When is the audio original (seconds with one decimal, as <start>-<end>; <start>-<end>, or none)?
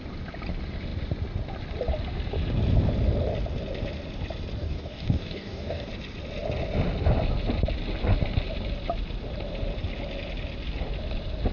0.0-4.6; 5.9-11.5